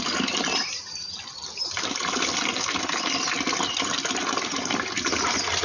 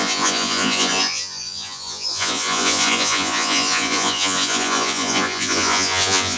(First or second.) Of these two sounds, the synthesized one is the second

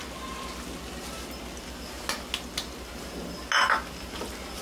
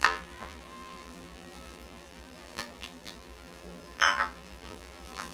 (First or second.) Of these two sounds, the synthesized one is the second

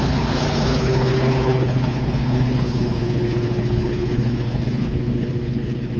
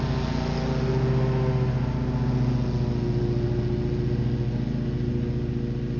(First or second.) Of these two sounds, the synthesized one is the first